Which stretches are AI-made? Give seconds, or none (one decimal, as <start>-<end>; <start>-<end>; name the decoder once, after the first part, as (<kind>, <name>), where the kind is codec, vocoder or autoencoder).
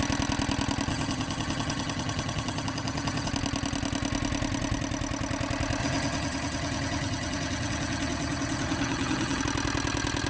0.9-3.3 (vocoder, HiFi-GAN); 5.8-9.4